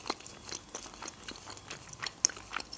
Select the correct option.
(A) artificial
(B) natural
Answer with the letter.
B